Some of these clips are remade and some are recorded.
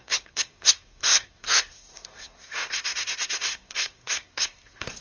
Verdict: remade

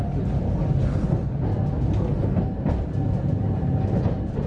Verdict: recorded